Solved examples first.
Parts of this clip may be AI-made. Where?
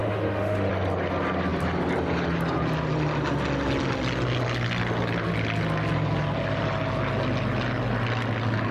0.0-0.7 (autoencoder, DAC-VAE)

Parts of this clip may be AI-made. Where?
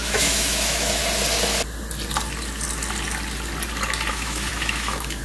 0.0-1.0 (autoencoder, DAC-VAE); 4.1-5.2